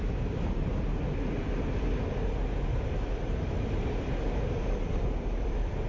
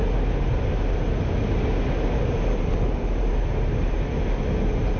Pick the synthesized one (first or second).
first